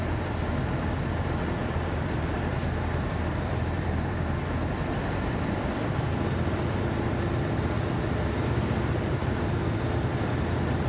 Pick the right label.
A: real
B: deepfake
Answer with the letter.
B